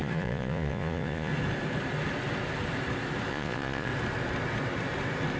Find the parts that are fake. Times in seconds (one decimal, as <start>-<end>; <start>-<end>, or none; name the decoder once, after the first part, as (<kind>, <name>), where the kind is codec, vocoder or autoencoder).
0.0-1.3 (vocoder, Vocos); 3.3-3.9